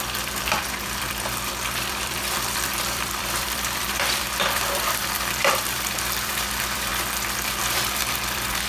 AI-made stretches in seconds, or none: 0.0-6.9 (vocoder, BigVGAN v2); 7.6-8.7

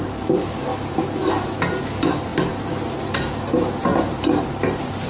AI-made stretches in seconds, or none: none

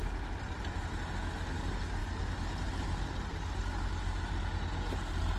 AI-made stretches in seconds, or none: 0.0-0.6 (vocoder, BigVGAN v2)

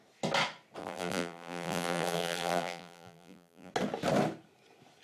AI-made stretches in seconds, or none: 0.8-3.7 (vocoder, BigVGAN v2)

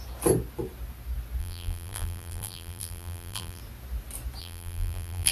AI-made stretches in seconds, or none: 1.4-3.6 (vocoder, BigVGAN v2); 4.4-5.3